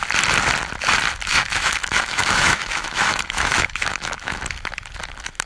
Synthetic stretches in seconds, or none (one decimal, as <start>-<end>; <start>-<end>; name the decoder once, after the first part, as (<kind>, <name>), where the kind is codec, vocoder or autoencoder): 1.3-4.4 (autoencoder, DAC-VAE)